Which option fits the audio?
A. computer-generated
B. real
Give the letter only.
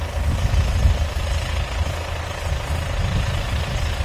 B